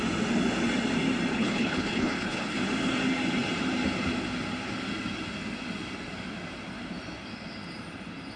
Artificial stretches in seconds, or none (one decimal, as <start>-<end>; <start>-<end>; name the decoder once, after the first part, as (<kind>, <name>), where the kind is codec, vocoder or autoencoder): 1.3-2.6 (codec, HILCodec)